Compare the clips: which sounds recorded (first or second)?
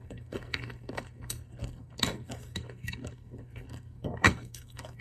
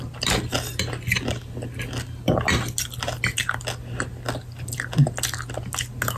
second